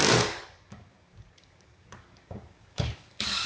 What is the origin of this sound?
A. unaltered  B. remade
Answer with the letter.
B